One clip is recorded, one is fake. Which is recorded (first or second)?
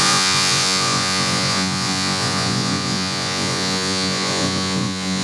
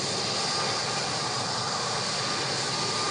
second